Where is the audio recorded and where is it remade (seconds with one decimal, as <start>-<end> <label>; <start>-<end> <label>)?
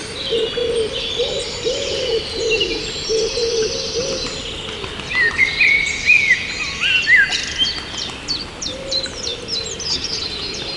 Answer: 0.0-10.8 recorded